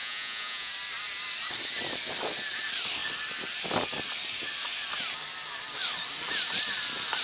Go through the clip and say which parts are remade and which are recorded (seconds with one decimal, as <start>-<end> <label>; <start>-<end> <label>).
0.0-0.7 remade; 0.7-7.2 recorded